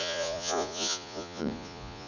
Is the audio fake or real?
fake